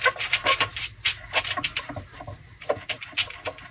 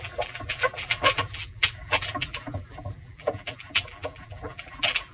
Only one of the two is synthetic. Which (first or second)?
second